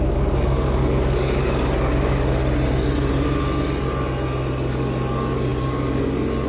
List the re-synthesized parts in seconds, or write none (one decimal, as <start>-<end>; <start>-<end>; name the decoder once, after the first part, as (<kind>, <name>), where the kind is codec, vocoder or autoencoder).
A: 0.0-2.4 (codec, DAC); 4.7-6.5